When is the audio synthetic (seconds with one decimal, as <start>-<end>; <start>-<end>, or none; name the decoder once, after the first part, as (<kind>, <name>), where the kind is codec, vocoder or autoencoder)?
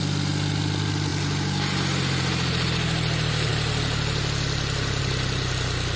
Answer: none